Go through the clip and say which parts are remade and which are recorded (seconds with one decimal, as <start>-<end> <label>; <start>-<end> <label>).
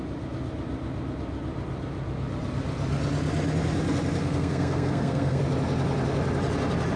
0.0-4.2 recorded; 4.2-5.4 remade; 5.4-7.0 recorded